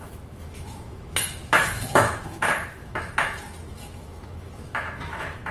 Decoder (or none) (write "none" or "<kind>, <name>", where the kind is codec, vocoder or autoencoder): autoencoder, DAC-VAE